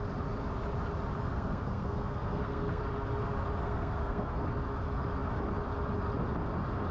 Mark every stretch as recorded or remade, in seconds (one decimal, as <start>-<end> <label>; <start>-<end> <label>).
0.0-1.2 recorded; 1.2-2.8 remade; 2.8-3.6 recorded; 3.6-4.4 remade; 4.4-6.9 recorded